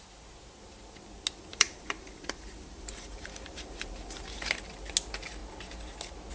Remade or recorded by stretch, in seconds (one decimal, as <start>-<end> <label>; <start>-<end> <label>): 0.0-1.5 recorded; 1.5-4.5 remade; 4.5-6.3 recorded